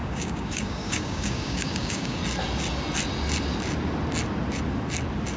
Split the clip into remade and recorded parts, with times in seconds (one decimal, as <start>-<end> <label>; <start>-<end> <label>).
0.0-2.2 remade; 2.2-5.4 recorded

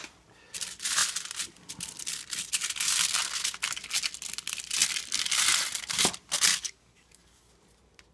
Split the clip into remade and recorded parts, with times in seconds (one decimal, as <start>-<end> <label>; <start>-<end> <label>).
0.0-6.5 recorded; 6.5-7.5 remade; 7.5-8.1 recorded

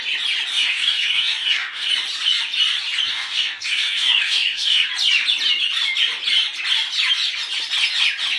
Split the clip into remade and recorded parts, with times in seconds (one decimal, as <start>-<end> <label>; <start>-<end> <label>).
0.0-0.5 recorded; 0.5-1.9 remade; 1.9-3.1 recorded; 3.1-4.9 remade; 4.9-8.4 recorded

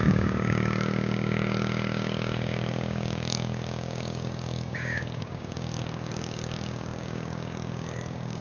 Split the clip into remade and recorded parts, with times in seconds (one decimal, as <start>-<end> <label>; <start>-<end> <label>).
0.0-8.4 remade

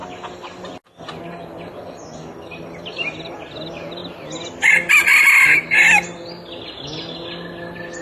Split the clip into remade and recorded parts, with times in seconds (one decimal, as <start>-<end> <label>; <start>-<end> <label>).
0.0-8.0 recorded